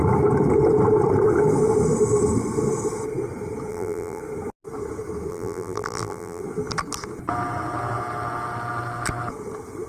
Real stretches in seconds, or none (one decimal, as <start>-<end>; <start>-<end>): 0.0-3.7; 4.2-5.3; 6.4-9.9